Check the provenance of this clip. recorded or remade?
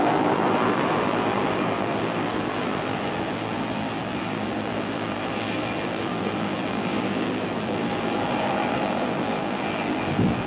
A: remade